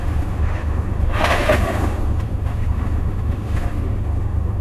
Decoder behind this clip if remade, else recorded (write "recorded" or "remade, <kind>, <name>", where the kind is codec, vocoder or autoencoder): remade, autoencoder, DAC-VAE